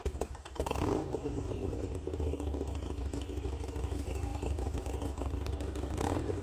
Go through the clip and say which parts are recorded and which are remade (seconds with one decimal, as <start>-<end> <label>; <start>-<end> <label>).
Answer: 0.0-6.4 remade